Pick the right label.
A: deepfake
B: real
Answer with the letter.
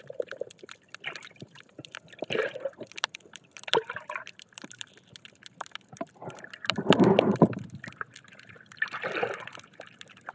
B